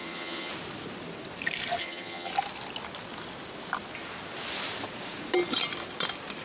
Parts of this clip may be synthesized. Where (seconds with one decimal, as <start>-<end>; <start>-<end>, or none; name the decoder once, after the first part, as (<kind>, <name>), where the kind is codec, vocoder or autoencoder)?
0.0-0.5 (vocoder, HiFi-GAN); 1.8-2.3

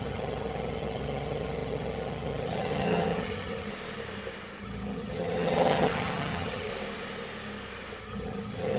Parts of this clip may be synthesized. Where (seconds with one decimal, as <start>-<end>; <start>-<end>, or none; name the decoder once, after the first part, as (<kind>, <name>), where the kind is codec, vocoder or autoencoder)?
0.0-3.7 (vocoder, HiFi-GAN); 4.6-6.7; 8.0-8.8

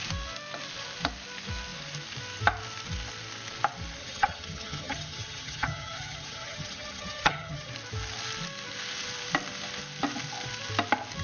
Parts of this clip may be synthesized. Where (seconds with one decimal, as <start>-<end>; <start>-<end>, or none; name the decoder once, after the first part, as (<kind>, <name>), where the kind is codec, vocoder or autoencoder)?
4.0-7.7 (vocoder, HiFi-GAN)